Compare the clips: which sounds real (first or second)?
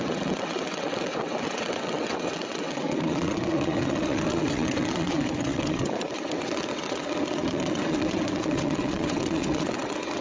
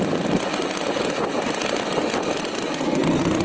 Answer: second